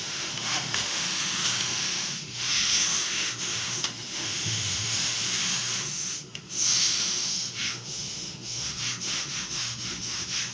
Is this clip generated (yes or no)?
yes